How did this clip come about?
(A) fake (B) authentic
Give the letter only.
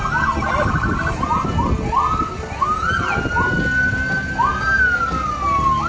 B